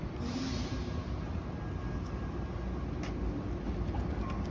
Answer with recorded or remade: recorded